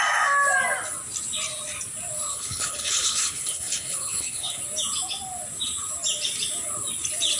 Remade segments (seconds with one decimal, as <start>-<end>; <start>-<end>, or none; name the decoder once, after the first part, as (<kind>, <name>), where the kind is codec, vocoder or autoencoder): 2.3-4.6 (codec, HILCodec)